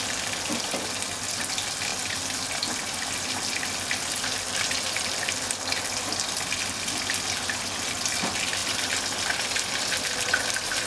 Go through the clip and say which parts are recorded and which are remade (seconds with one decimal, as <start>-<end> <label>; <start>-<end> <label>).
0.0-10.9 recorded